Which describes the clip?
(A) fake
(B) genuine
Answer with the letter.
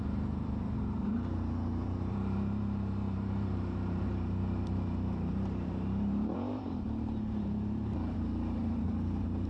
A